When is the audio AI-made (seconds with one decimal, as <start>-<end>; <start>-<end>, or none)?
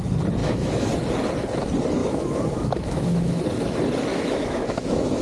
0.4-0.9; 2.0-3.4; 4.1-5.2